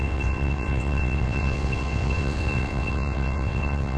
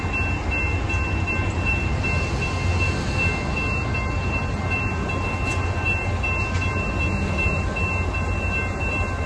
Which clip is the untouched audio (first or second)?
second